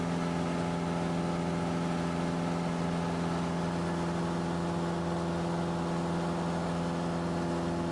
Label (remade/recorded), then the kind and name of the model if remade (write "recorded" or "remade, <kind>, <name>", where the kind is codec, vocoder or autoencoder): recorded